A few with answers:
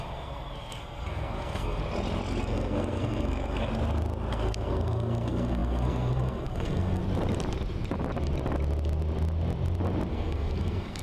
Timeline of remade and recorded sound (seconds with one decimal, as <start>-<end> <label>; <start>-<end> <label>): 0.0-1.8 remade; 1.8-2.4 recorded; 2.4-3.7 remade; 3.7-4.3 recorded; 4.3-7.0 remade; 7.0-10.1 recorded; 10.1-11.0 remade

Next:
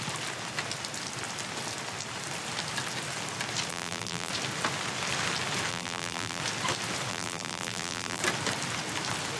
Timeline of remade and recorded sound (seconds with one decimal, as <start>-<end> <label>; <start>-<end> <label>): 0.0-3.7 recorded; 3.7-4.3 remade; 4.3-5.7 recorded; 5.7-6.4 remade; 6.4-7.1 recorded; 7.1-8.2 remade; 8.2-9.4 recorded

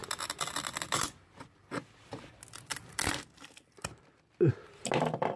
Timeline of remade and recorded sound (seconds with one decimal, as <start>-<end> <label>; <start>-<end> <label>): 0.0-5.4 recorded

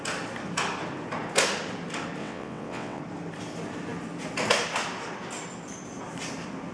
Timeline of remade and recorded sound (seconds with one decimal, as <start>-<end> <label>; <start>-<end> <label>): 0.0-2.2 recorded; 2.2-3.0 remade; 3.0-6.7 recorded

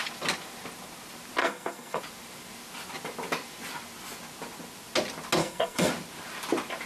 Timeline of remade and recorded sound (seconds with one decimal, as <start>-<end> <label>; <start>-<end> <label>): 0.0-1.4 recorded; 1.4-2.0 remade; 2.0-5.4 recorded; 5.4-5.9 remade; 5.9-6.9 recorded